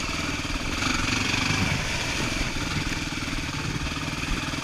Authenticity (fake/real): real